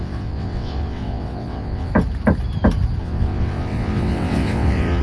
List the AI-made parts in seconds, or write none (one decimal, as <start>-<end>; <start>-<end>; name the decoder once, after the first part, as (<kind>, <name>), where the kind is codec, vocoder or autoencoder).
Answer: 0.0-1.9 (vocoder, WaveNeXt); 3.0-5.0